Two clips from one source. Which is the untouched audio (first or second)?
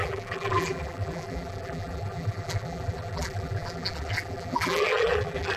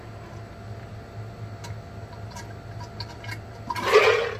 second